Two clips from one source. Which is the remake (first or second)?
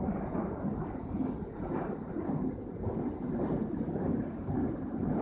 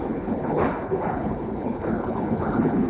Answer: second